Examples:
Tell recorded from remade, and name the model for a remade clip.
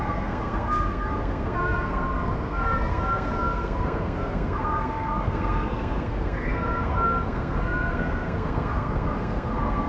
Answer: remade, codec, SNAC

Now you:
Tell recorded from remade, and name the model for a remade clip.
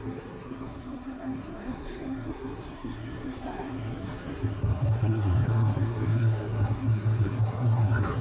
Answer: remade, codec, SNAC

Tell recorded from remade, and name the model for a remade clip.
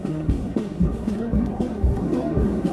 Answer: remade, codec, SNAC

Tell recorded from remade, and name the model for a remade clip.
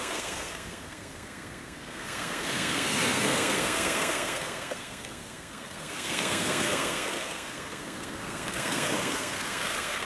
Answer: remade, codec, SNAC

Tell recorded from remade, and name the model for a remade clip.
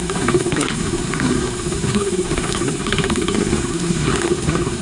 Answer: remade, codec, SNAC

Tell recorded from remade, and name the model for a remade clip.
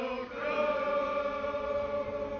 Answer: recorded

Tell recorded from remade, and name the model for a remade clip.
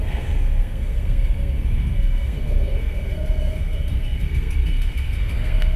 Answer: remade, codec, SNAC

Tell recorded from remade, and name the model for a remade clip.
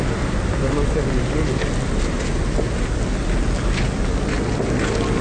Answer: recorded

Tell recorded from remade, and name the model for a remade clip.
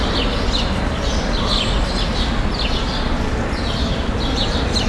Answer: recorded